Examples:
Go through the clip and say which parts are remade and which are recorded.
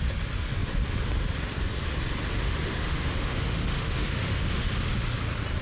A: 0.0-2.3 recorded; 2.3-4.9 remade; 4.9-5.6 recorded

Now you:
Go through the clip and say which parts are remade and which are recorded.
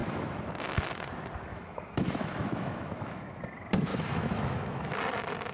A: 0.0-0.5 remade; 0.5-1.5 recorded; 1.5-3.4 remade; 3.4-3.9 recorded; 3.9-5.0 remade; 5.0-5.5 recorded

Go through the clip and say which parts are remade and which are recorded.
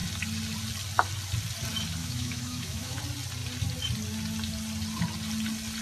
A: 0.0-2.0 recorded; 2.0-3.0 remade; 3.0-5.8 recorded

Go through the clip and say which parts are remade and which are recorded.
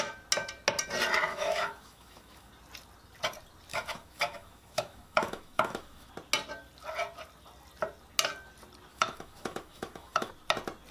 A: 0.0-1.3 recorded; 1.3-2.5 remade; 2.5-3.7 recorded; 3.7-6.1 remade; 6.1-8.9 recorded; 8.9-10.3 remade; 10.3-10.9 recorded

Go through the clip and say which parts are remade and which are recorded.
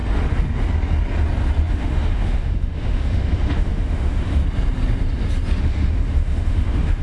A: 0.0-1.7 recorded; 1.7-4.4 remade; 4.4-5.6 recorded; 5.6-7.0 remade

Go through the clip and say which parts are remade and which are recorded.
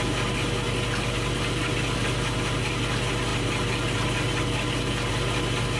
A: 0.0-5.8 recorded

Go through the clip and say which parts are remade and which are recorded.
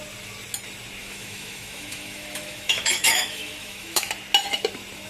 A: 0.0-1.0 recorded; 1.0-4.1 remade; 4.1-5.1 recorded